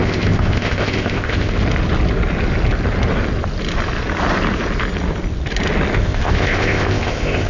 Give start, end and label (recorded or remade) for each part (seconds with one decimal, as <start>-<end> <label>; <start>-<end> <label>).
0.0-1.6 remade; 1.6-6.0 recorded; 6.0-7.5 remade